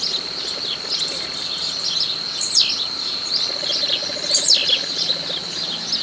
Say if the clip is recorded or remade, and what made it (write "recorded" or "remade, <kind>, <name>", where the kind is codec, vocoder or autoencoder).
recorded